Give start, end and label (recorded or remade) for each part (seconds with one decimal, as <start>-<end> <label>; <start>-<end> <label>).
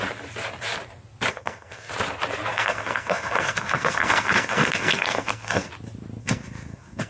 0.0-1.3 recorded; 1.3-1.9 remade; 1.9-2.5 recorded; 2.5-5.7 remade; 5.7-6.2 recorded; 6.2-7.1 remade